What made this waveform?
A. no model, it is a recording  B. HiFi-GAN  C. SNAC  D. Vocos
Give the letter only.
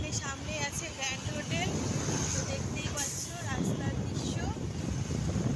A